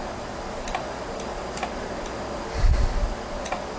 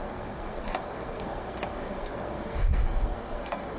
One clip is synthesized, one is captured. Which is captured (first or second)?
first